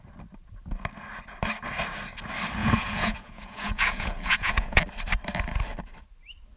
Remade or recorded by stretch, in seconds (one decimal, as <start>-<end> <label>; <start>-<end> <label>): 0.0-2.6 recorded; 2.6-4.8 remade; 4.8-6.6 recorded